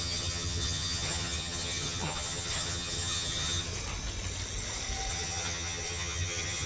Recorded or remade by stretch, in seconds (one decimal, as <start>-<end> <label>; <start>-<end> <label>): 0.0-3.7 remade; 3.7-5.1 recorded; 5.1-6.7 remade